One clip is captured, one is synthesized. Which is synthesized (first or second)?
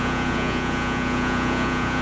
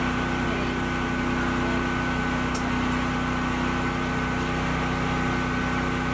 first